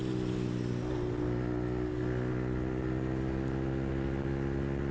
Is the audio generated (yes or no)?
no